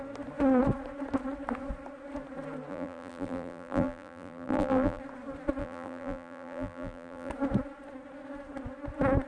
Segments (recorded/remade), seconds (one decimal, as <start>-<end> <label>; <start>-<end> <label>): 0.0-2.7 recorded; 2.7-5.0 remade; 5.0-5.6 recorded; 5.6-7.3 remade; 7.3-9.3 recorded